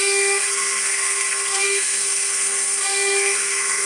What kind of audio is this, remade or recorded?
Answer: remade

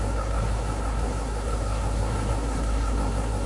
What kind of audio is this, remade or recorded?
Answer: remade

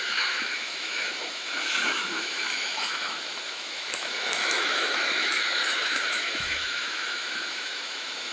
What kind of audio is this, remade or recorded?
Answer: remade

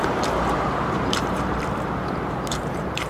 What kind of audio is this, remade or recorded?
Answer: remade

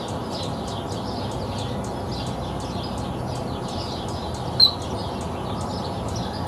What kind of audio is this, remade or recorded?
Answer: recorded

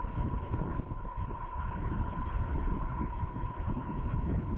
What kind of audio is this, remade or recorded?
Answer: remade